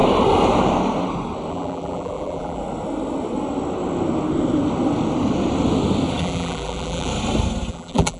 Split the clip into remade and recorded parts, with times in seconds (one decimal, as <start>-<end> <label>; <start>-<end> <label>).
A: 0.0-1.5 recorded; 1.5-2.6 remade; 2.6-6.2 recorded; 6.2-7.1 remade; 7.1-7.7 recorded; 7.7-8.2 remade